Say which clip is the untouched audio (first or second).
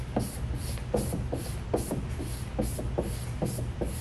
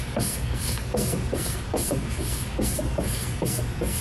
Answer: first